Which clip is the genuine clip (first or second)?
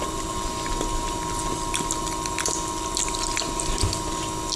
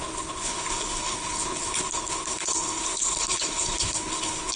first